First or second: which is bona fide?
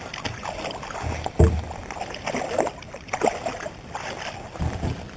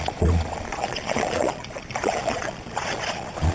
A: first